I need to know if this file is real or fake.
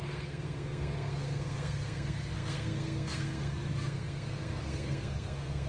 fake